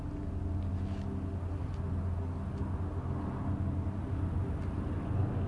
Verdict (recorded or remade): recorded